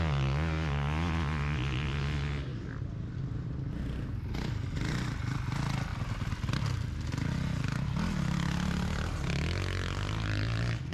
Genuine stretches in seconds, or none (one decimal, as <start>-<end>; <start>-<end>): 0.0-10.9